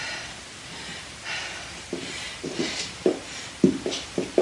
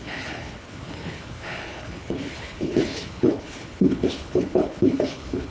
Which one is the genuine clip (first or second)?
first